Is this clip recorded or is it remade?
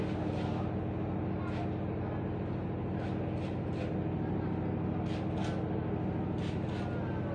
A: recorded